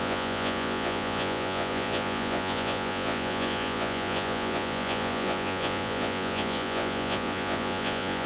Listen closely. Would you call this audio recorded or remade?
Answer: remade